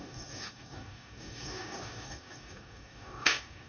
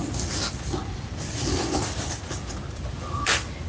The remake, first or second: first